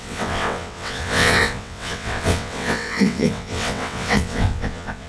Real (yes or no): no